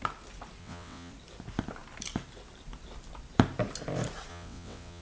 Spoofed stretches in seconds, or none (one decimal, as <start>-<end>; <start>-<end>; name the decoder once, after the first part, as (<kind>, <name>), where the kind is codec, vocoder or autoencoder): 0.6-1.1 (vocoder, WaveNeXt); 4.3-5.0